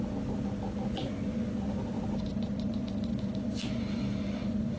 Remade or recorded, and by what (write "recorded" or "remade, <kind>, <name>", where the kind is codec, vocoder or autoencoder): recorded